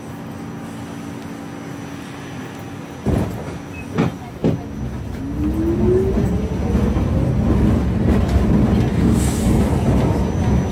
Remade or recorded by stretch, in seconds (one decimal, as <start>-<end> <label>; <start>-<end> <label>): 0.0-8.9 recorded; 8.9-9.4 remade; 9.4-10.7 recorded